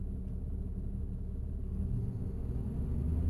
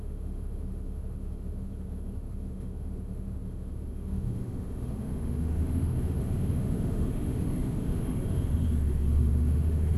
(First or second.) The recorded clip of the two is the first